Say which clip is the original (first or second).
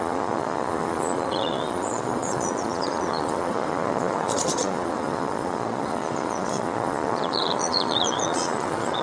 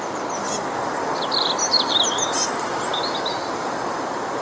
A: second